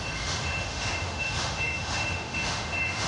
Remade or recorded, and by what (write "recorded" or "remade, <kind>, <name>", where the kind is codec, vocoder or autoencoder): remade, autoencoder, DAC-VAE